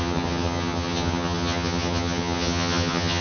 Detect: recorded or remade remade